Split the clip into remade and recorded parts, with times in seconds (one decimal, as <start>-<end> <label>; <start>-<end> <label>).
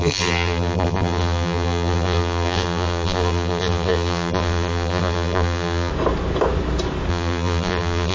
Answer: 0.0-5.9 remade; 5.9-7.1 recorded; 7.1-8.1 remade